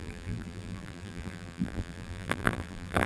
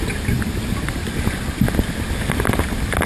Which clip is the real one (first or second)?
second